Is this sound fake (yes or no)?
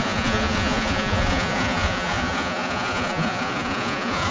yes